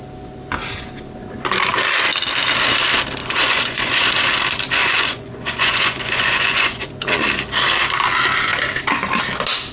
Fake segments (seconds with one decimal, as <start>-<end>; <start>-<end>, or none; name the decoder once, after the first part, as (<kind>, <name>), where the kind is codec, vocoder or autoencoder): 3.2-4.1 (vocoder, Vocos); 4.8-6.9